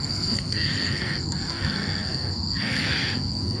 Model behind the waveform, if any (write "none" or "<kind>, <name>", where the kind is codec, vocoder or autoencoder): codec, SNAC